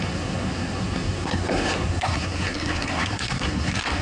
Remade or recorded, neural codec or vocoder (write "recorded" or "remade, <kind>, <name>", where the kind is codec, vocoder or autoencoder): remade, codec, SNAC